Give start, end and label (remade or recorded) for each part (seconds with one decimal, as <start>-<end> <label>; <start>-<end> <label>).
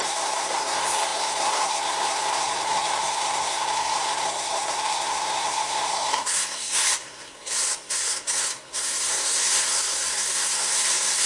0.0-11.3 remade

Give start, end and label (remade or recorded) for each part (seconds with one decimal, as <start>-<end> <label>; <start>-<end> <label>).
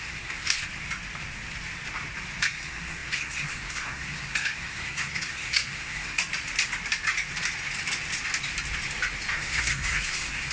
0.0-0.6 remade; 0.6-2.4 recorded; 2.4-6.2 remade; 6.2-9.3 recorded; 9.3-10.5 remade